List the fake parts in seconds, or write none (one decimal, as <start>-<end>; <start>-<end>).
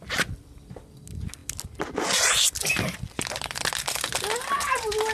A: none